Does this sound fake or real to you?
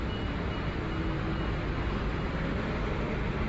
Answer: real